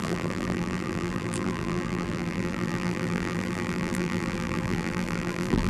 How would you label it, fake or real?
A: fake